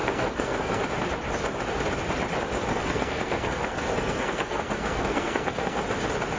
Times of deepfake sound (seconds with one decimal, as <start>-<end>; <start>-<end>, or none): 0.0-0.8; 2.7-5.8